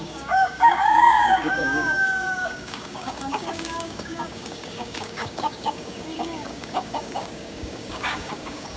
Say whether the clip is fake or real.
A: fake